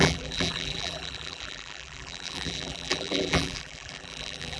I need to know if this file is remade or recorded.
remade